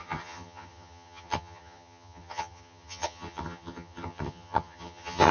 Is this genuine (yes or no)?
no